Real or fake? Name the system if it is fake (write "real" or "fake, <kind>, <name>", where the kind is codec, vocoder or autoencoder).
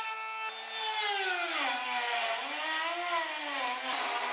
real